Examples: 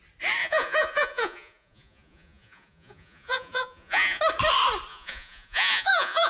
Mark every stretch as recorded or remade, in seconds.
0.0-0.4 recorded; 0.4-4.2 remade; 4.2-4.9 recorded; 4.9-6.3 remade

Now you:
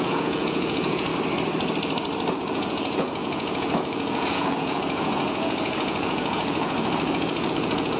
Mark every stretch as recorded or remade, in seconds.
0.0-1.1 remade; 1.1-2.3 recorded; 2.3-8.0 remade

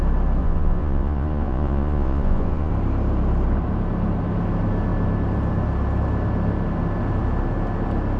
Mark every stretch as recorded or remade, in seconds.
0.0-0.4 recorded; 0.4-2.7 remade; 2.7-8.2 recorded

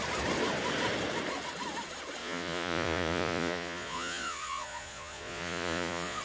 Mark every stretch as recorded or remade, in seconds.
0.0-2.2 recorded; 2.2-6.2 remade

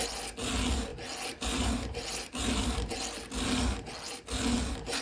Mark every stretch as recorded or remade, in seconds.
0.0-5.0 recorded

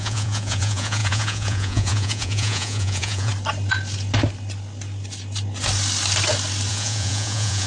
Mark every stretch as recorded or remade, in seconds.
0.0-3.3 remade; 3.3-6.7 recorded; 6.7-7.7 remade

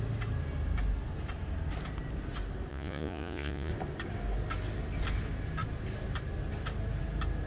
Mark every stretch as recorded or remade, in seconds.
0.0-2.7 recorded; 2.7-3.7 remade; 3.7-7.5 recorded